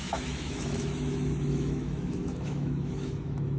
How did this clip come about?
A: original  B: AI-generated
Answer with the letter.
B